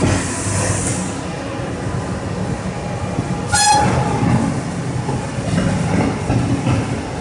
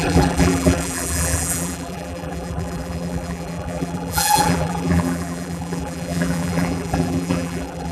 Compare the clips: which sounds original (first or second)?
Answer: first